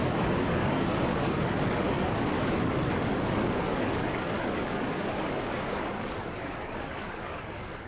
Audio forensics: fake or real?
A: fake